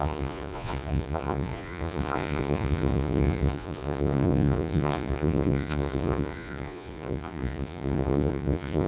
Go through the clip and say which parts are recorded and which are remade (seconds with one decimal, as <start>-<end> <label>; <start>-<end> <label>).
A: 0.0-8.9 remade

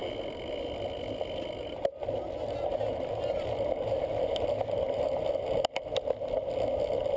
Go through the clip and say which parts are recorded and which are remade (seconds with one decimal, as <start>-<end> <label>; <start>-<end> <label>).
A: 0.0-7.2 recorded